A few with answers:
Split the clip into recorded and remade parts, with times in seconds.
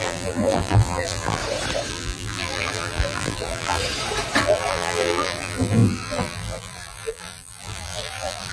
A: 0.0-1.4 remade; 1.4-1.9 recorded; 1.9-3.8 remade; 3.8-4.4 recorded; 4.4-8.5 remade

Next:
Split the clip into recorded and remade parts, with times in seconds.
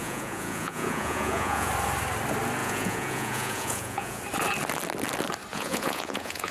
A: 0.0-1.7 remade; 1.7-2.6 recorded; 2.6-4.2 remade; 4.2-5.5 recorded; 5.5-6.5 remade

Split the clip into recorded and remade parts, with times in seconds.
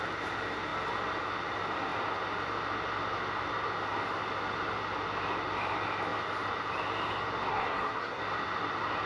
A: 0.0-7.5 recorded; 7.5-8.2 remade; 8.2-9.1 recorded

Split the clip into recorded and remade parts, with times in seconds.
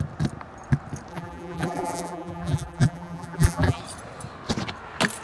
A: 0.0-1.1 recorded; 1.1-3.8 remade; 3.8-5.2 recorded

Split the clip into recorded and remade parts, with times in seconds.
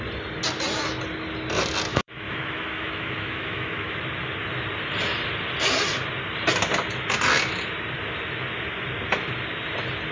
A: 0.0-1.9 recorded; 1.9-4.0 remade; 4.0-10.1 recorded